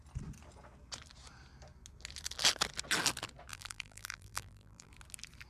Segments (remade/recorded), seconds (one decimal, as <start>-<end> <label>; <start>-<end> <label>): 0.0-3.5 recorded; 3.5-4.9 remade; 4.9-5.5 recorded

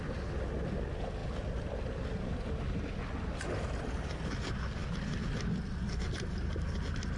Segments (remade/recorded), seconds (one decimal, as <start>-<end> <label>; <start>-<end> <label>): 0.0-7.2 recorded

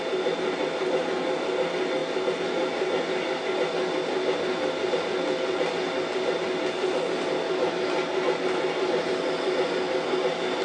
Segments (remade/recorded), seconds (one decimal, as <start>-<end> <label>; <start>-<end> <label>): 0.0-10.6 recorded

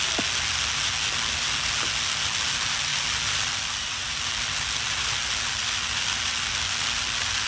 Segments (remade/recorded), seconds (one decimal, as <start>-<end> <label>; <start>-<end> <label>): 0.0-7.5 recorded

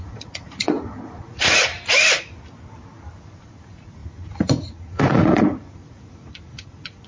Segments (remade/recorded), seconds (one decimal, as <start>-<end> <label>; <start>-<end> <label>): 0.0-1.7 remade; 1.7-3.2 recorded; 3.2-7.1 remade

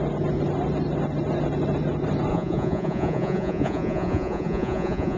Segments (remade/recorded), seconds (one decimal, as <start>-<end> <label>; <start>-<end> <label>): 0.0-2.3 recorded; 2.3-5.2 remade

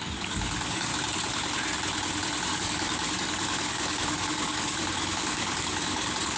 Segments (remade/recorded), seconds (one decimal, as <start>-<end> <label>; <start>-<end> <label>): 0.0-0.9 remade; 0.9-2.5 recorded; 2.5-6.4 remade

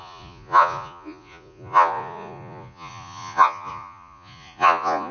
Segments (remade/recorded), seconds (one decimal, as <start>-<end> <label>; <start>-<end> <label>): 0.0-5.1 remade